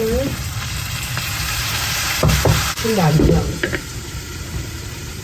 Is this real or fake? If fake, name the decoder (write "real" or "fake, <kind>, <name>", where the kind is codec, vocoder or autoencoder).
fake, vocoder, BigVGAN v2